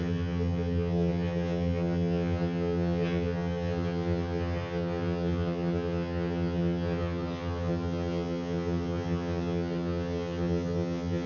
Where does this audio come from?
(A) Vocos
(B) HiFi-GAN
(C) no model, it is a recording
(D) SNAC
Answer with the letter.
B